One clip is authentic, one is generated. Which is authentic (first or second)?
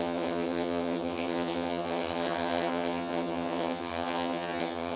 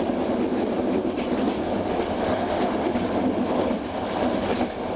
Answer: second